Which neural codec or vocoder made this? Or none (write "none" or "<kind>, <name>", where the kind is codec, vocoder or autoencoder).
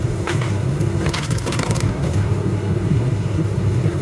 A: codec, SNAC